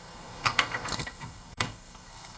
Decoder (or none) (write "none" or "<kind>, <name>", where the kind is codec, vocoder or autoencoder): codec, SNAC